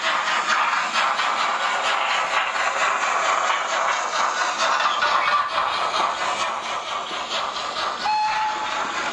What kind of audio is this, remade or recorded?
recorded